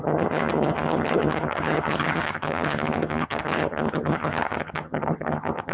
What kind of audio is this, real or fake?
fake